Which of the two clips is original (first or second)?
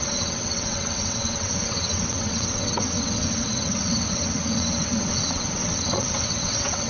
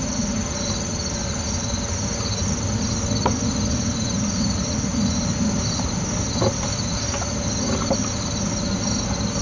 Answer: second